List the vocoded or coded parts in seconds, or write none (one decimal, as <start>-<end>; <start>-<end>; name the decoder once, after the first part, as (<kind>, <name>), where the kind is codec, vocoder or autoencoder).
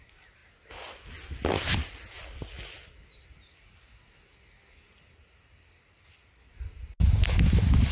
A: none